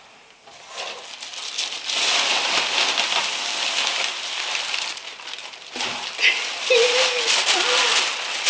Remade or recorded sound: recorded